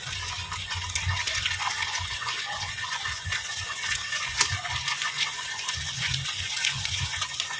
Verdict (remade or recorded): remade